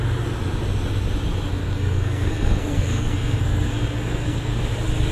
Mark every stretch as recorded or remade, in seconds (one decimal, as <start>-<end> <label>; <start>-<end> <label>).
0.0-1.6 recorded; 1.6-4.6 remade; 4.6-5.1 recorded